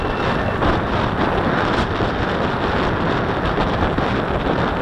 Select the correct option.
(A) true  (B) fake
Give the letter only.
A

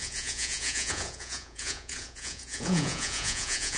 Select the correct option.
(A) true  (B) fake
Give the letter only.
B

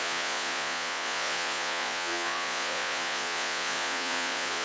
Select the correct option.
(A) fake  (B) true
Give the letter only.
A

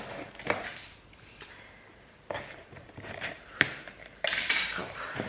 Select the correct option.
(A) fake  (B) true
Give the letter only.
A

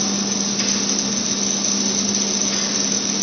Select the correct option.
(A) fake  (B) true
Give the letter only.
B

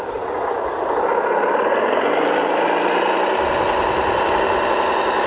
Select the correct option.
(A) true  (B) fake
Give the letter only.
A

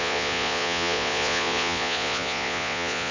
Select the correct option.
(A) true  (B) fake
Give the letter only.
B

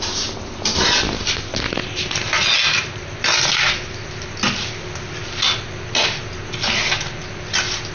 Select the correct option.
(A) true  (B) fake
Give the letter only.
A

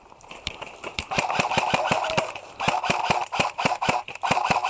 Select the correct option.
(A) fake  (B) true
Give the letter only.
A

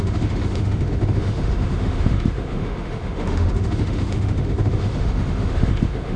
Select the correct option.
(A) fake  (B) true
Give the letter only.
A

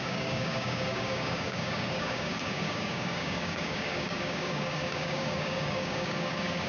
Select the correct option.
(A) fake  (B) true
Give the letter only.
A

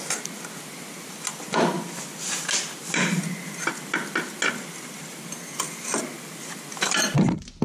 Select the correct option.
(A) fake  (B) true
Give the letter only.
B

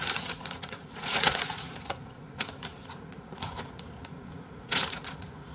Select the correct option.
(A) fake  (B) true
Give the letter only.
A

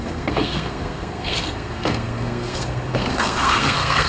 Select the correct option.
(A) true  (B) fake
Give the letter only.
B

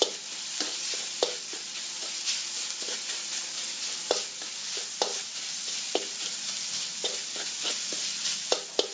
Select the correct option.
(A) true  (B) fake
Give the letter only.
A